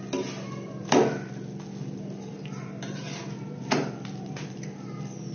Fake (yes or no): no